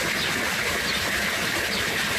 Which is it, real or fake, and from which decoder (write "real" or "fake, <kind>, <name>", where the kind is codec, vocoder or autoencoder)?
real